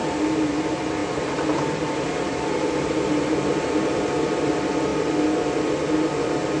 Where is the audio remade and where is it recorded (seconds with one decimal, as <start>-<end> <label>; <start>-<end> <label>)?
0.0-6.6 recorded

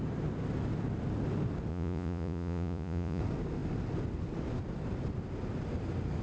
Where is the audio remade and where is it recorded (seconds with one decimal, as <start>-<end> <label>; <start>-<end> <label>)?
0.0-1.7 recorded; 1.7-3.2 remade; 3.2-6.2 recorded

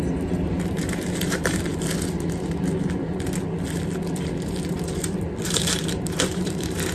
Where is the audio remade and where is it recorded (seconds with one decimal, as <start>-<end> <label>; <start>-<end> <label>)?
0.0-1.7 remade; 1.7-5.4 recorded; 5.4-6.9 remade

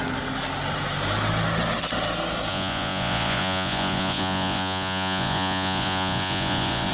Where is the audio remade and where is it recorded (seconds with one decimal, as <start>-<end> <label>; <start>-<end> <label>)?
0.0-2.5 recorded; 2.5-6.9 remade

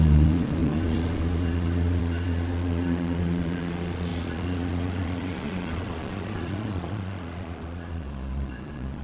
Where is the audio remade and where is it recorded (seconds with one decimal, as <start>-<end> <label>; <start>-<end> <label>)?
0.0-9.0 remade

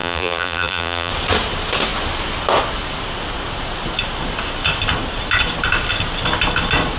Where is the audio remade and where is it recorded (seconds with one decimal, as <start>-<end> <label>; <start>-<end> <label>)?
0.0-1.1 remade; 1.1-7.0 recorded